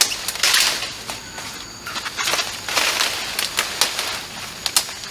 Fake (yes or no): no